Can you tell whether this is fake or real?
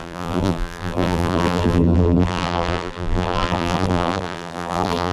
fake